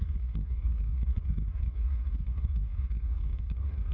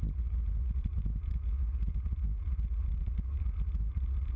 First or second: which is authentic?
second